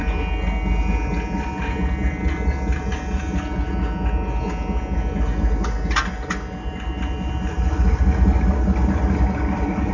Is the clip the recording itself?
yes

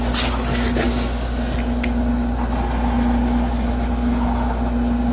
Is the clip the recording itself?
yes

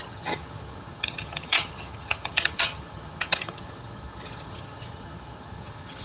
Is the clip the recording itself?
no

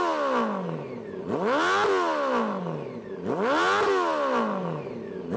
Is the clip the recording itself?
yes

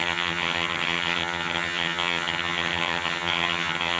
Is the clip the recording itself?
no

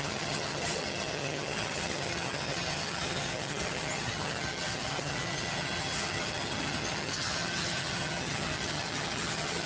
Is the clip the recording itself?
no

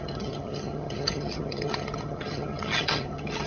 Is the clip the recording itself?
no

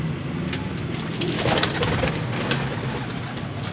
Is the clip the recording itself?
yes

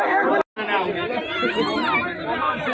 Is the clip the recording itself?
yes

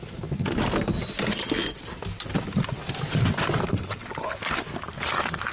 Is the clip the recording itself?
yes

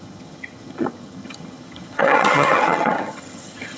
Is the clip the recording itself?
no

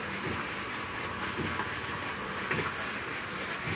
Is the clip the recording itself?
yes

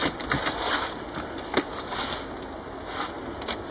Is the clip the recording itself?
yes